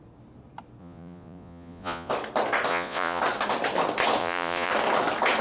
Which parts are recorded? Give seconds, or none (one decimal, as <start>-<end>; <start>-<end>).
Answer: 0.0-0.8; 2.1-2.7; 3.2-4.2; 4.7-5.4